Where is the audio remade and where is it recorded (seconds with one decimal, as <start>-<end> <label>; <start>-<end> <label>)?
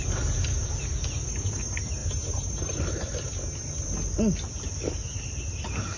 0.0-6.0 recorded